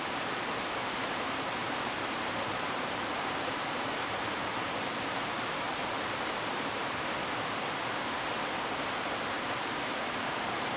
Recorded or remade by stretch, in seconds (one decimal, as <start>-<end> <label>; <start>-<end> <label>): 0.0-6.8 remade; 6.8-10.2 recorded; 10.2-10.8 remade